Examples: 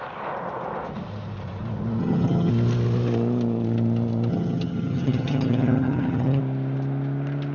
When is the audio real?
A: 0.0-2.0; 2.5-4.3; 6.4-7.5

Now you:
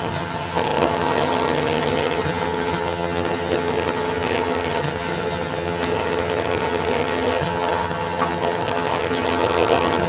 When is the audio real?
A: none

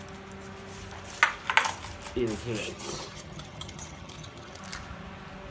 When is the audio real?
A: 0.0-2.6; 4.6-5.5

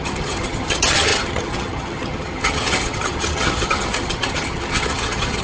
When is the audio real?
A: none